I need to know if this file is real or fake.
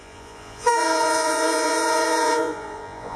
fake